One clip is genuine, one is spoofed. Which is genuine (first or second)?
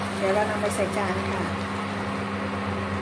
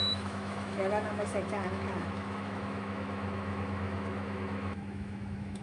first